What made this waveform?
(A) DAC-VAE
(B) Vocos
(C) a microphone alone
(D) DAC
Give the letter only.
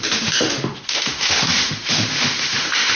A